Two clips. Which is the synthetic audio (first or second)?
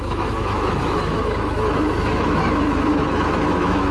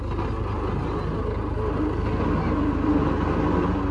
first